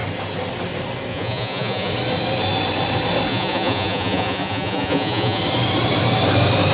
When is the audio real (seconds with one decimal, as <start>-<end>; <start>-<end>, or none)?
0.0-1.1; 1.9-3.3; 5.4-6.7